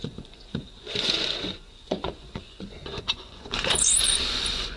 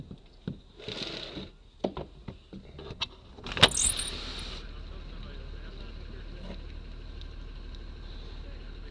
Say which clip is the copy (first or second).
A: first